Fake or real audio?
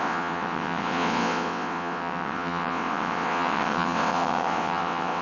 fake